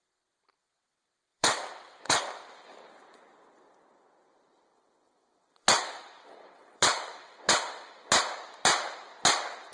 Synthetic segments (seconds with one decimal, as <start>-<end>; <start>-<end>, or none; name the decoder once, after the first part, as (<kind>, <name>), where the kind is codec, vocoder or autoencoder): 0.6-2.2 (vocoder, WaveNeXt); 4.7-8.1